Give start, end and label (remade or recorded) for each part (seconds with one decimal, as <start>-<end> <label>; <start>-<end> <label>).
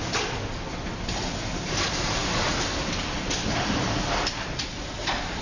0.0-5.4 recorded